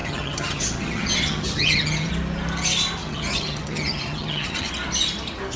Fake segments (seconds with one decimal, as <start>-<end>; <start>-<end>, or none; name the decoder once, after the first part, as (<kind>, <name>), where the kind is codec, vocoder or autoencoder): 0.0-2.1 (vocoder, HiFi-GAN); 3.0-4.7

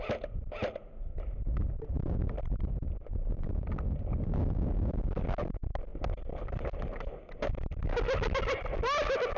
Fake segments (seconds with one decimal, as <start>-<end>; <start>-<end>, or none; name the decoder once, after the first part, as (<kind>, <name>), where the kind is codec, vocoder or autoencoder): none

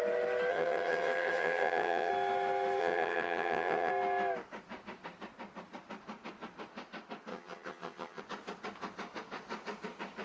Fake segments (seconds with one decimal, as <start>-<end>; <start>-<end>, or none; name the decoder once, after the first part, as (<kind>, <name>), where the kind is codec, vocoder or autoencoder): 0.5-2.1 (vocoder, HiFi-GAN); 2.8-3.9; 7.3-8.2

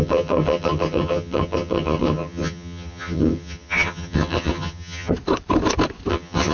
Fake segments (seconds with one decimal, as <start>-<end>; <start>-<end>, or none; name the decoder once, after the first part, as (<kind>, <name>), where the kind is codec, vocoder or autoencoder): 0.0-5.1 (vocoder, HiFi-GAN); 6.1-6.5